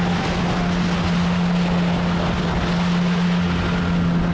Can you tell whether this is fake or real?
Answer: real